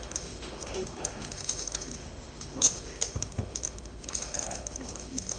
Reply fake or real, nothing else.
fake